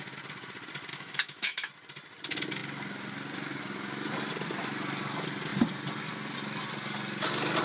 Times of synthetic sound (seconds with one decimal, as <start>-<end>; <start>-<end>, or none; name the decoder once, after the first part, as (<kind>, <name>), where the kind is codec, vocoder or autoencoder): 0.9-1.7 (autoencoder, DAC-VAE)